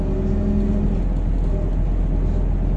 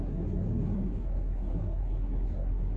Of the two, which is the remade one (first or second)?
second